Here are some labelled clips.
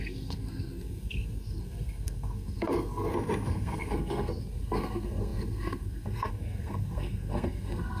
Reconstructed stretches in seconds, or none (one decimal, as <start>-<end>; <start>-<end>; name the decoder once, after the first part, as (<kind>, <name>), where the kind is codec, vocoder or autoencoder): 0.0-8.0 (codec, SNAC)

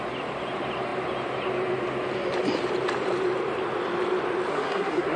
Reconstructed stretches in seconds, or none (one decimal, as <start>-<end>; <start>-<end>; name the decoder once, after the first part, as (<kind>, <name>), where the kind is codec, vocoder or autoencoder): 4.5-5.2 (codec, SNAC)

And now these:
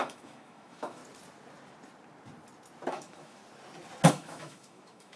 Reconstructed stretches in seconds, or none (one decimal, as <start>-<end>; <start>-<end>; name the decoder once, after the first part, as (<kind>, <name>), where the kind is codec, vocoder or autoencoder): 0.0-1.0 (autoencoder, DAC-VAE); 2.9-3.4; 4.1-5.2

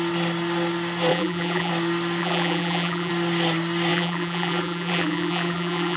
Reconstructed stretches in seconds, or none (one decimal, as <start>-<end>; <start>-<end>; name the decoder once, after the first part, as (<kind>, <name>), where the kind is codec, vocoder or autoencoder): 1.1-1.7 (vocoder, BigVGAN v2); 2.2-3.1; 3.9-6.0

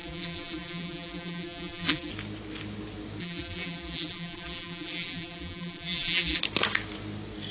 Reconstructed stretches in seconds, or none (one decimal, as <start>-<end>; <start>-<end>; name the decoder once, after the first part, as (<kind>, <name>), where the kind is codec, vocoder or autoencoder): 0.0-2.1 (vocoder, BigVGAN v2); 3.2-6.4

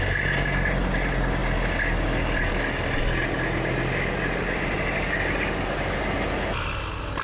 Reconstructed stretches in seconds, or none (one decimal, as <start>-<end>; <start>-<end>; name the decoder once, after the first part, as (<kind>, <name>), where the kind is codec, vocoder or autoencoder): none